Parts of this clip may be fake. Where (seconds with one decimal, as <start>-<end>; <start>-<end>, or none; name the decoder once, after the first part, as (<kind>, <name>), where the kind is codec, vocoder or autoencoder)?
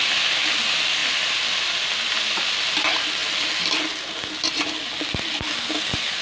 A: none